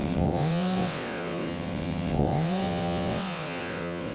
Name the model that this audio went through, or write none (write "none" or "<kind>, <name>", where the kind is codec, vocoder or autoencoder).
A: vocoder, WaveNeXt